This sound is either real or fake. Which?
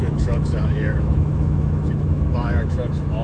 fake